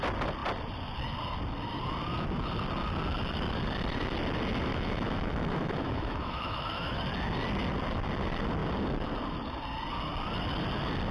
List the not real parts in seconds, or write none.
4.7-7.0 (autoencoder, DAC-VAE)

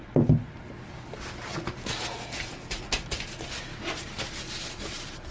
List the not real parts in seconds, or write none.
none